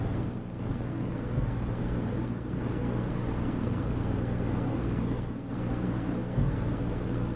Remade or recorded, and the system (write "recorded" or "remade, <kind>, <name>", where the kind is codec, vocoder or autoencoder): remade, codec, SNAC